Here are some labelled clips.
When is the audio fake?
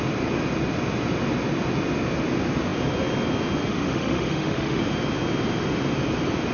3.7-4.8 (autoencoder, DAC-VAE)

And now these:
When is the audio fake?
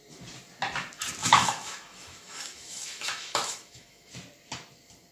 1.2-4.1 (autoencoder, DAC-VAE)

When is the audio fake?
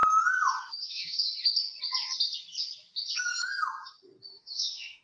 0.6-1.3 (autoencoder, DAC-VAE); 4.3-5.0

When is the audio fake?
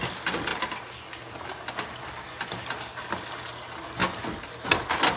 none